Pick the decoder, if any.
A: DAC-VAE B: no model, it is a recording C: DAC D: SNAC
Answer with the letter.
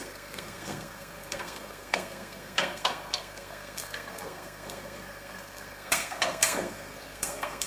D